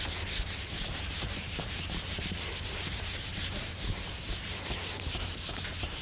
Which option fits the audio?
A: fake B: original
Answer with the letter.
A